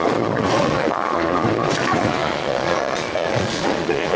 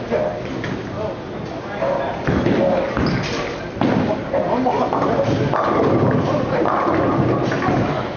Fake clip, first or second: first